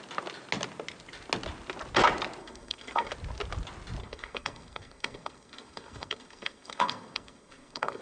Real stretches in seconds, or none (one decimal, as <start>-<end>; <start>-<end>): 0.0-2.4; 3.1-4.0